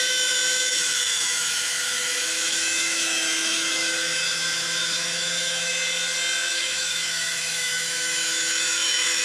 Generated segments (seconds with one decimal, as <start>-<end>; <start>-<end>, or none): 0.0-5.7; 6.5-9.2